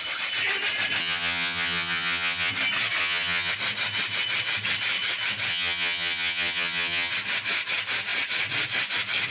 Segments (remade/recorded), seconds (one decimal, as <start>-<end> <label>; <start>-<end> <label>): 0.0-1.0 recorded; 1.0-2.5 remade; 2.5-3.0 recorded; 3.0-3.5 remade; 3.5-5.5 recorded; 5.5-7.1 remade; 7.1-9.3 recorded